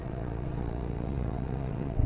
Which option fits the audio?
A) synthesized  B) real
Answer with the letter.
A